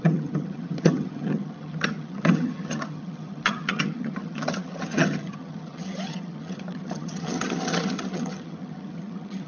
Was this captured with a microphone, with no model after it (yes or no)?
no